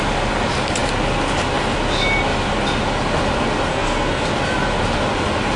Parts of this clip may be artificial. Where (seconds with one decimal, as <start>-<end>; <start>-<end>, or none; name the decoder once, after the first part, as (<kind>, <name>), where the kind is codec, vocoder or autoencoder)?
3.7-4.2 (codec, SNAC)